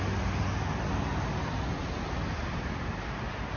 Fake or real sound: real